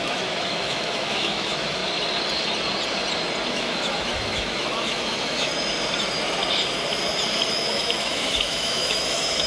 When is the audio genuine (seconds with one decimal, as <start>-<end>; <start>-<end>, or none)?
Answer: 1.8-3.5; 5.5-7.5

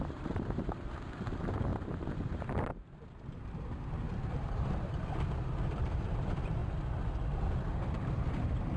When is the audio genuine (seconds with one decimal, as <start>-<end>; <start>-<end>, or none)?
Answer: 6.6-7.8